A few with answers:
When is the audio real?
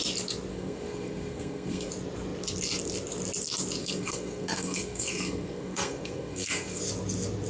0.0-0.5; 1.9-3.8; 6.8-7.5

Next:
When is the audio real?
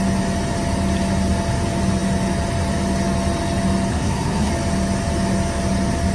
0.0-3.9; 4.5-6.1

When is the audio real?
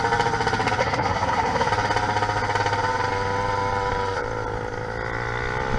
0.0-0.8; 1.7-5.8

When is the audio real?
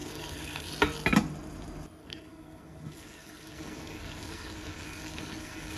0.7-2.0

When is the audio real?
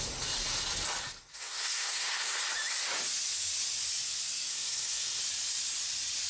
0.0-1.3; 2.4-4.5; 5.2-6.3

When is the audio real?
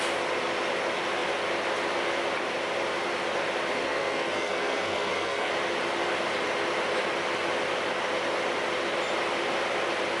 0.0-3.8; 5.5-10.2